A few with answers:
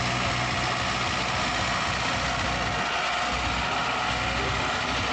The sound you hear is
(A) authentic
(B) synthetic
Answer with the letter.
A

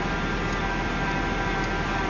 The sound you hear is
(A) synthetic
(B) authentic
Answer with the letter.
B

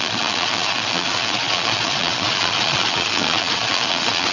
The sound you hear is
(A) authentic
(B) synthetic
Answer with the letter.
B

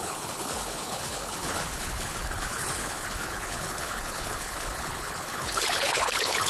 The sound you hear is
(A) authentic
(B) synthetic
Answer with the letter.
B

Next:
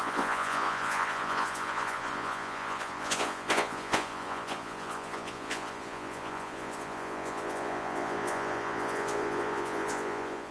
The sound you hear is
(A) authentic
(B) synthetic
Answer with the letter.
B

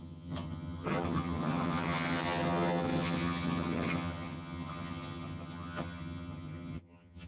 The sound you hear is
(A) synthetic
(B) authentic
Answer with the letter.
A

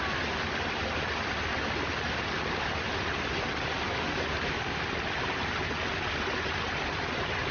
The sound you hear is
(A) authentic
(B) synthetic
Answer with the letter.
A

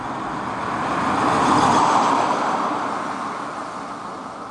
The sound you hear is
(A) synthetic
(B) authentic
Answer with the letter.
B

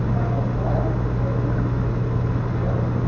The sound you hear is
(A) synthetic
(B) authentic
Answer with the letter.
B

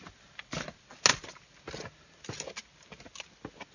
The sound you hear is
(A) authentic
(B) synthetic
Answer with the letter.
A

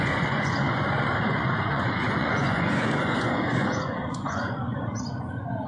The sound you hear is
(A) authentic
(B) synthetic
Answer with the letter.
B